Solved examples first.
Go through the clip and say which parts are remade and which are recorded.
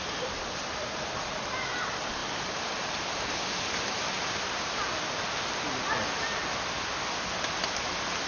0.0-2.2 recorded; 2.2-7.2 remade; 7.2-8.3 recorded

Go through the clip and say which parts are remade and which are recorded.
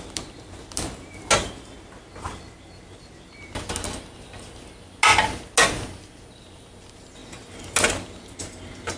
0.0-9.0 recorded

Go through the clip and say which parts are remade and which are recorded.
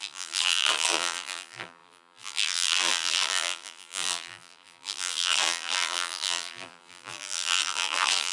0.0-8.3 remade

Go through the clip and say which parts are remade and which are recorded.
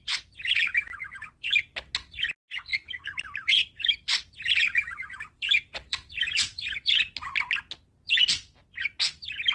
0.0-2.7 recorded; 2.7-7.0 remade; 7.0-9.5 recorded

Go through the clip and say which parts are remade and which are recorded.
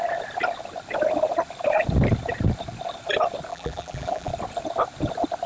0.0-3.5 recorded; 3.5-4.3 remade; 4.3-5.5 recorded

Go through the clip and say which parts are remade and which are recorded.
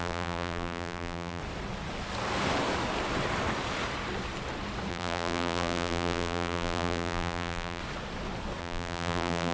0.0-1.4 remade; 1.4-4.9 recorded; 4.9-7.8 remade; 7.8-8.6 recorded; 8.6-9.5 remade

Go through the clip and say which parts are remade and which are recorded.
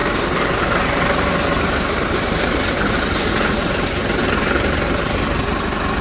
0.0-3.1 remade; 3.1-4.2 recorded; 4.2-5.0 remade; 5.0-6.0 recorded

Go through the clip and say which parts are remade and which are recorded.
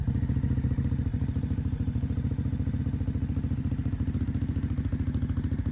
0.0-2.8 remade; 2.8-5.7 recorded